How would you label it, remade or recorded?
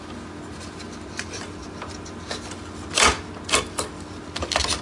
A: recorded